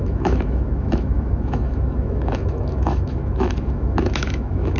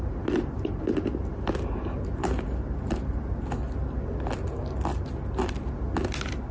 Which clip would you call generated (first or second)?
first